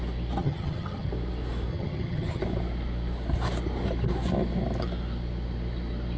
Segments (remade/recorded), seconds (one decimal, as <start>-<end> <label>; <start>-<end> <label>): 0.0-0.4 recorded; 0.4-1.1 remade; 1.1-1.7 recorded; 1.7-2.4 remade; 2.4-6.2 recorded